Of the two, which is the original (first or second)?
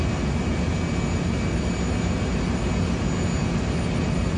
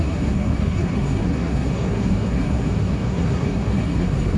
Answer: first